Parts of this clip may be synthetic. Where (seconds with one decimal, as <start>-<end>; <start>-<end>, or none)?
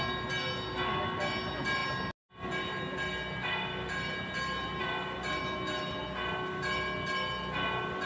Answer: none